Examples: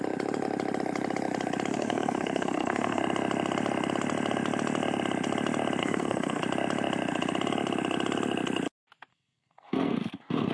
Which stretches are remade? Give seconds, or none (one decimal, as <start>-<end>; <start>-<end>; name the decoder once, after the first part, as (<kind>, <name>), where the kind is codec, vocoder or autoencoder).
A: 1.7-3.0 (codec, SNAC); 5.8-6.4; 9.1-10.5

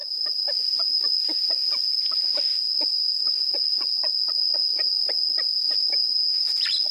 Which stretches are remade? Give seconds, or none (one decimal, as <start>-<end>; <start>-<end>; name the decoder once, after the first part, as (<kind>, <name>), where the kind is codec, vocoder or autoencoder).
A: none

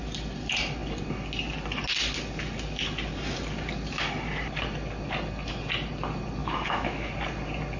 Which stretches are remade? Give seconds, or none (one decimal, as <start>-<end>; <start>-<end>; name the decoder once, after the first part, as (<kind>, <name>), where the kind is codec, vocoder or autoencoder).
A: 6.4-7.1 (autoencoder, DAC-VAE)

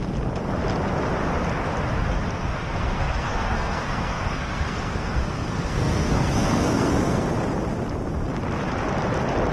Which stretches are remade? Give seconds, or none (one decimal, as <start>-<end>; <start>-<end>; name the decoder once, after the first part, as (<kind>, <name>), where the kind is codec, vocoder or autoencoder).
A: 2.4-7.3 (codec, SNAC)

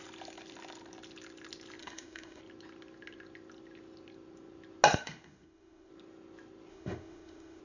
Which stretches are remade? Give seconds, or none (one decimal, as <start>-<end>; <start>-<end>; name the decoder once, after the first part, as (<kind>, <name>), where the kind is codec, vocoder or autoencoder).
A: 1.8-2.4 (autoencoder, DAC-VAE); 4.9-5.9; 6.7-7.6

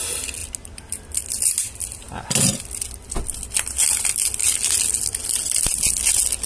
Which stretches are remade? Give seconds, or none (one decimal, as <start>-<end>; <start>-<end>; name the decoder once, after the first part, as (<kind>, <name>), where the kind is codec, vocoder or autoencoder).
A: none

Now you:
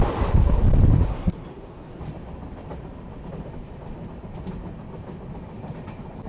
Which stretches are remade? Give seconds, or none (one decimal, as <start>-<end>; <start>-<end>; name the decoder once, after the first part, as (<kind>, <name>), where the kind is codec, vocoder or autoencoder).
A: 1.1-2.0 (codec, SNAC)